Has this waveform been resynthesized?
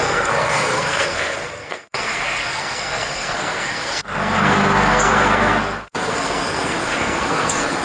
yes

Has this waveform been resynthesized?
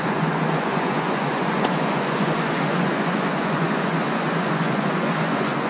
yes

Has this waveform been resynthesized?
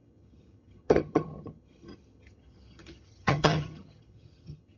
yes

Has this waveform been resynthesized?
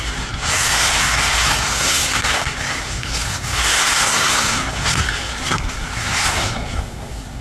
yes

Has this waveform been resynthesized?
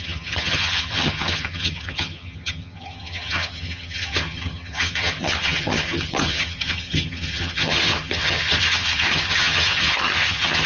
yes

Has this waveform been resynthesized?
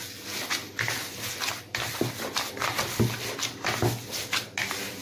no